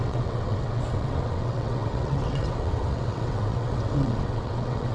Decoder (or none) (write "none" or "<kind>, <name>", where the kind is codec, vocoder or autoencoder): vocoder, WaveNeXt